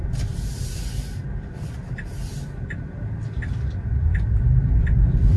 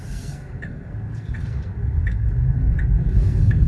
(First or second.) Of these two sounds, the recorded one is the first